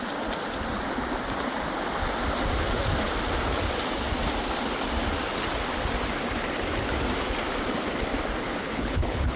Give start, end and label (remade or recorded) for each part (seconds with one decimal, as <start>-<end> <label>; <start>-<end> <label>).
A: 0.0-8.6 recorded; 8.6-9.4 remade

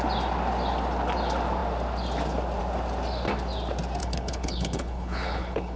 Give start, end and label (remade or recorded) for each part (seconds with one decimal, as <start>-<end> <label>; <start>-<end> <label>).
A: 0.0-4.0 recorded; 4.0-5.8 remade

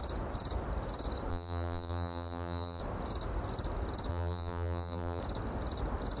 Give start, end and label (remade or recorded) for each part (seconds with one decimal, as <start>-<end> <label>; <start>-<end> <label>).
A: 0.0-1.3 recorded; 1.3-2.8 remade; 2.8-4.1 recorded; 4.1-5.2 remade; 5.2-6.2 recorded

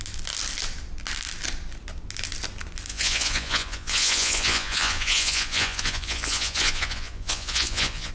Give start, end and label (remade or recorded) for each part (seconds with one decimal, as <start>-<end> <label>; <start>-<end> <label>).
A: 0.0-2.9 recorded; 2.9-8.1 remade

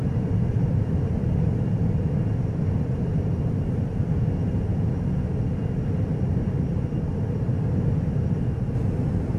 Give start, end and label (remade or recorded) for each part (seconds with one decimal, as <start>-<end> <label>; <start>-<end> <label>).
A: 0.0-3.3 remade; 3.3-9.4 recorded

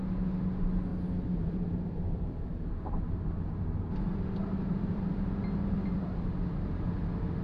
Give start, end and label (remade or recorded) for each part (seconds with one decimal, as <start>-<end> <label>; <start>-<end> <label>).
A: 0.0-0.9 recorded; 0.9-5.3 remade; 5.3-7.4 recorded